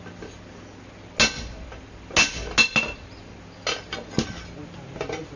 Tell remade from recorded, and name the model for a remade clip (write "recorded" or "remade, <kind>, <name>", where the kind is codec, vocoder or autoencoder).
recorded